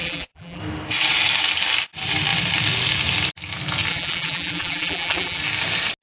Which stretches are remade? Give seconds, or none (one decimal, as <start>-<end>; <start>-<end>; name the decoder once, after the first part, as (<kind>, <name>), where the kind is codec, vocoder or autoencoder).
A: 0.0-0.6 (vocoder, BigVGAN v2); 3.9-5.4